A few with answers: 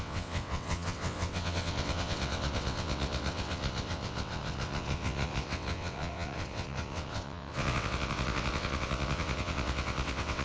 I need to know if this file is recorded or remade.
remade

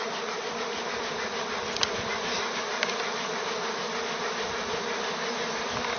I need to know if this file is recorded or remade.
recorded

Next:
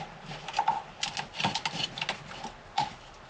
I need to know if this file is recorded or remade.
recorded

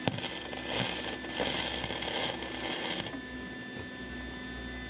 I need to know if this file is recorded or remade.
recorded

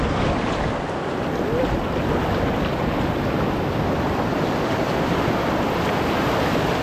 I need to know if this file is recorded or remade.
recorded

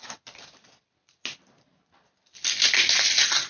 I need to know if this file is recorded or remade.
recorded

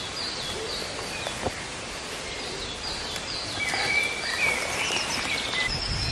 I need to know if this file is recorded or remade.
recorded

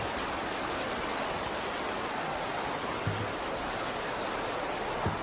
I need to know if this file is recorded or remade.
recorded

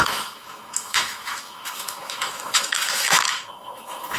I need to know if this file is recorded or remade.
remade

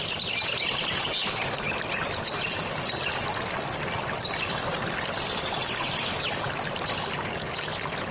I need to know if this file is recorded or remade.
recorded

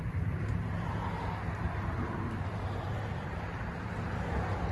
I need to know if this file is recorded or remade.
remade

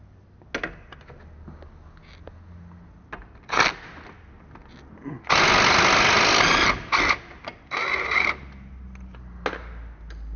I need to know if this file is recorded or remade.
recorded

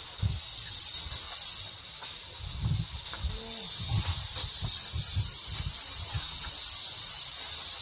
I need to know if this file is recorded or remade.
recorded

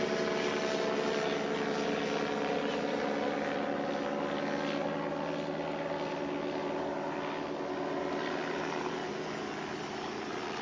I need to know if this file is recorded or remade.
recorded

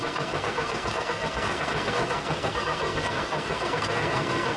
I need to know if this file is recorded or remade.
remade